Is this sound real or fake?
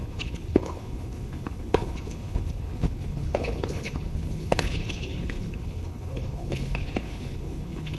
fake